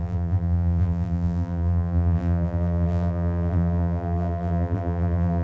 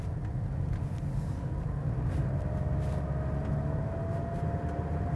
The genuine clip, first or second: second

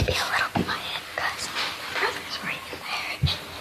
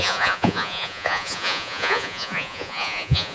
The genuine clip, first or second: first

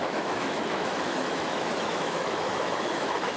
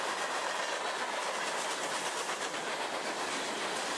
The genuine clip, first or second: second